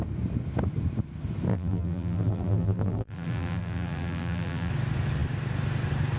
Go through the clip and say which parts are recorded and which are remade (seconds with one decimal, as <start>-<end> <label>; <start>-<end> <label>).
0.0-1.5 recorded; 1.5-4.7 remade; 4.7-6.2 recorded